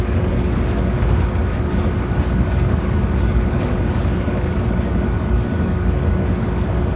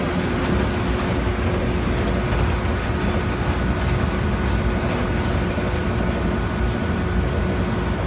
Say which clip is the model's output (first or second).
first